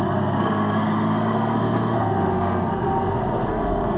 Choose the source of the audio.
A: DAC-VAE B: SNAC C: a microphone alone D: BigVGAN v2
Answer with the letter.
B